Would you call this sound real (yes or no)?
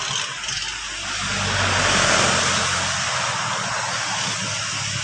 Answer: yes